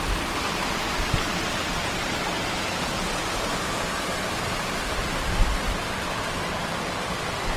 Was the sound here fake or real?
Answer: fake